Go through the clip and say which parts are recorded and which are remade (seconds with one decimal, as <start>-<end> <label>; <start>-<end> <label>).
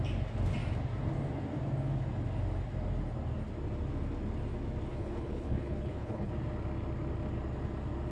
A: 0.0-4.9 recorded; 4.9-6.3 remade; 6.3-8.1 recorded